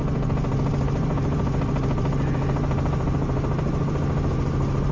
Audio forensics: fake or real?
fake